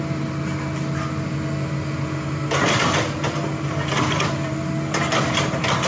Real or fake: real